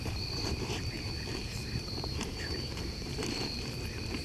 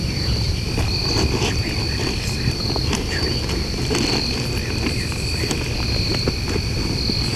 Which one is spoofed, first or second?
first